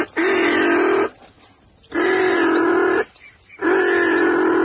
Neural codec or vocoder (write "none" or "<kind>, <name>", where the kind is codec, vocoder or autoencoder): none